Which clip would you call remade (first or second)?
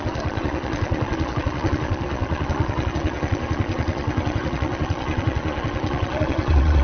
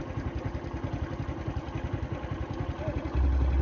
first